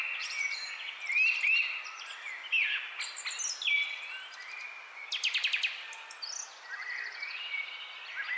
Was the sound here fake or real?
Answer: real